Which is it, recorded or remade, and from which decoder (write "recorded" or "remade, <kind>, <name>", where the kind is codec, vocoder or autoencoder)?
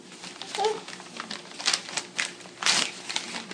recorded